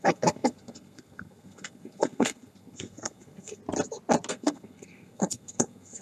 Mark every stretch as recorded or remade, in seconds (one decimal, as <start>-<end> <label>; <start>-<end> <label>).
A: 0.0-3.6 remade; 3.6-4.3 recorded; 4.3-6.0 remade